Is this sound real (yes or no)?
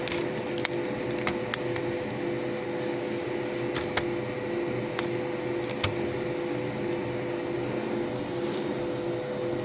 yes